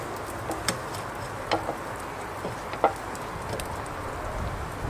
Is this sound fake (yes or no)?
no